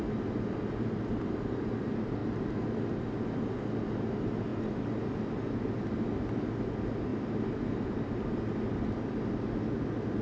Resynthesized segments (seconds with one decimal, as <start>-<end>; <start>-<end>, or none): none